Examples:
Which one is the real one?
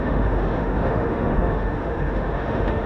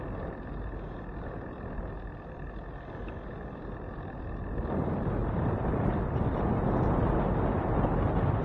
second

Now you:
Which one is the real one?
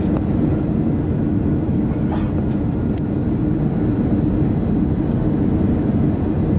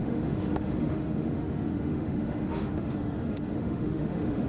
first